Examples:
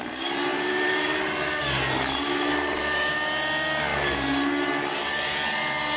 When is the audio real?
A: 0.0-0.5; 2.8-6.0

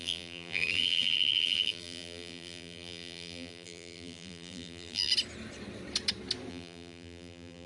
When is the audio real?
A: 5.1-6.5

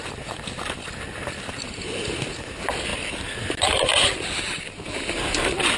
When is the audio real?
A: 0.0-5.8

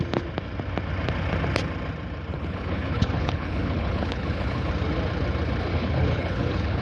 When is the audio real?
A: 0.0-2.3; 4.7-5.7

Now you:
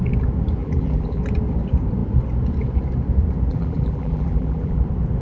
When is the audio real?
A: 0.0-0.6; 1.2-3.5; 4.8-5.2